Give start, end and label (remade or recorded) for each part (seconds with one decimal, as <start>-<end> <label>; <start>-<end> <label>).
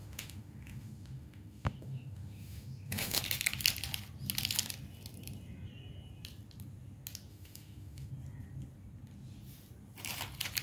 0.0-3.2 remade; 3.2-7.3 recorded; 7.3-8.1 remade; 8.1-10.6 recorded